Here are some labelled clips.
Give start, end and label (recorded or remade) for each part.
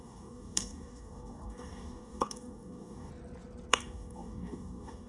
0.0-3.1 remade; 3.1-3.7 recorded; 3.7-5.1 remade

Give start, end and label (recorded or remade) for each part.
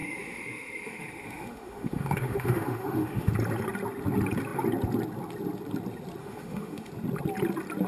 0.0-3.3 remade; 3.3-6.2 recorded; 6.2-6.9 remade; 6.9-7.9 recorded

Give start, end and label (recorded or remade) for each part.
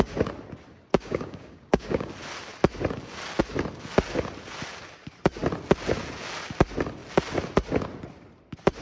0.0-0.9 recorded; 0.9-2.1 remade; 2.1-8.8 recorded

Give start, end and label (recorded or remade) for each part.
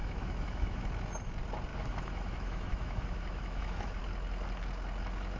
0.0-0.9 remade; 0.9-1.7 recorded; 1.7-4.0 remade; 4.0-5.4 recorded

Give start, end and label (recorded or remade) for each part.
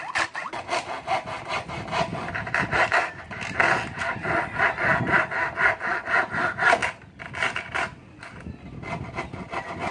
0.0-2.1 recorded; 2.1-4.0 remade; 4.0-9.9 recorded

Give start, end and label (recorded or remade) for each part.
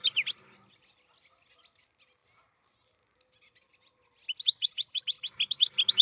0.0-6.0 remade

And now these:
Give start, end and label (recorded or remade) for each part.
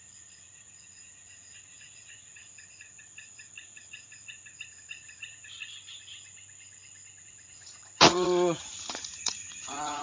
0.0-5.6 remade; 5.6-7.2 recorded; 7.2-10.0 remade